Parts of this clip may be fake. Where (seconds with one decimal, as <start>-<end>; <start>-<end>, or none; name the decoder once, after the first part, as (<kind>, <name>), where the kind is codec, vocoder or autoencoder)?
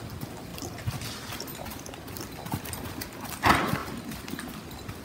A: 0.5-2.7 (vocoder, BigVGAN v2); 3.8-4.5